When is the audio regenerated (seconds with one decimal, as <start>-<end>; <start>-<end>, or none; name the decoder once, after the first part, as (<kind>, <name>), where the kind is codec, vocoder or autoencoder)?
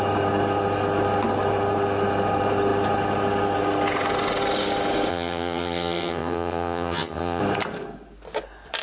5.1-7.4 (vocoder, HiFi-GAN)